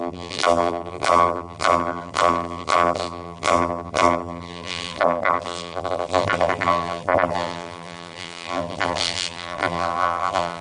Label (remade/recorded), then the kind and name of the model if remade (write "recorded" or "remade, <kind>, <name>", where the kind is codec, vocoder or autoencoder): remade, vocoder, BigVGAN v2